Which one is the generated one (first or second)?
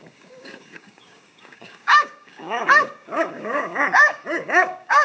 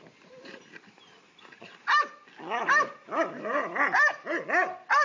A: first